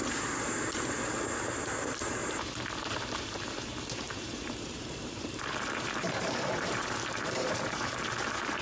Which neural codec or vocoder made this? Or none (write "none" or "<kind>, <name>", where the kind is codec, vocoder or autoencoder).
vocoder, BigVGAN v2